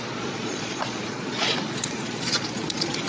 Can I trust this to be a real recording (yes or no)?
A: no